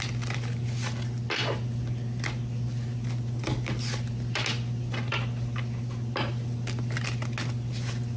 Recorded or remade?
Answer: recorded